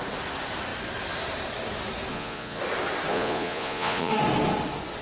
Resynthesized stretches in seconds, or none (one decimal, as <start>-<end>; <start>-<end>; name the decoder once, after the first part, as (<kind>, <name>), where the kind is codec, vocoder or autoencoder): 2.1-2.6 (vocoder, Vocos); 3.1-4.1